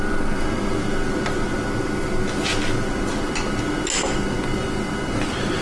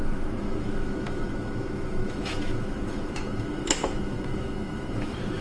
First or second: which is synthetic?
second